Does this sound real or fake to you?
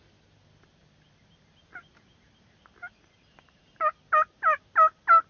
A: real